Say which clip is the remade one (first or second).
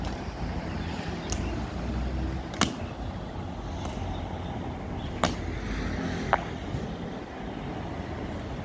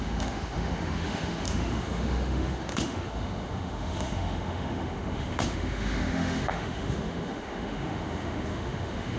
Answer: second